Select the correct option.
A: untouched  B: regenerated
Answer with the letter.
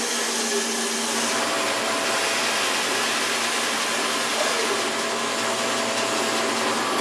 A